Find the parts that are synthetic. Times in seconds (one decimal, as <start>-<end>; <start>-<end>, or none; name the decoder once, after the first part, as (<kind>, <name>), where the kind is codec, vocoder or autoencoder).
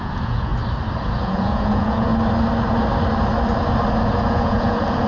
0.0-0.5 (vocoder, Vocos); 1.2-2.1; 4.1-5.1